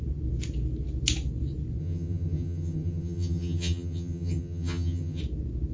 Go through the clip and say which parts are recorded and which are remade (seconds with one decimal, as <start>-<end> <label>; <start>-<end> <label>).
0.0-1.8 recorded; 1.8-5.2 remade; 5.2-5.7 recorded